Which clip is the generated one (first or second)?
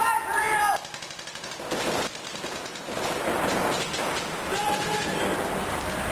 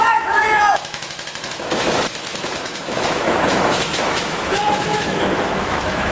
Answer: second